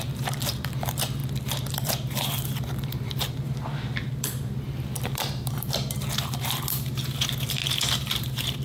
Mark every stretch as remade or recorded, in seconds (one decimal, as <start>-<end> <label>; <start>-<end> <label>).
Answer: 0.0-1.2 remade; 1.2-1.7 recorded; 1.7-7.6 remade; 7.6-8.1 recorded; 8.1-8.6 remade